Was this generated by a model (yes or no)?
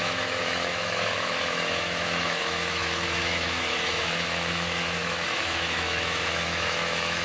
yes